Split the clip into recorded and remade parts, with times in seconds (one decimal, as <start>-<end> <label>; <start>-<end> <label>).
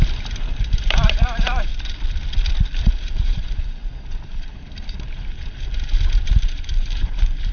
0.0-1.7 remade; 1.7-2.8 recorded; 2.8-3.8 remade; 3.8-4.3 recorded; 4.3-7.5 remade